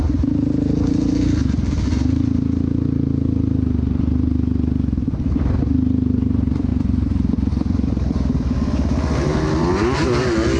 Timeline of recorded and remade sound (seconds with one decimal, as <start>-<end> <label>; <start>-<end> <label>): 0.0-10.6 recorded